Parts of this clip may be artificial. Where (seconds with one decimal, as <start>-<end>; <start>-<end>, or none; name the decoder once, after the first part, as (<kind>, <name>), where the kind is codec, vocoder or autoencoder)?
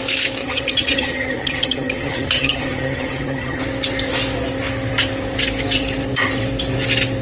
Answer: 0.4-3.6 (vocoder, HiFi-GAN)